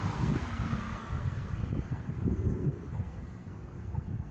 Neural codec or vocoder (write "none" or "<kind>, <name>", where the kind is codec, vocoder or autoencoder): codec, SNAC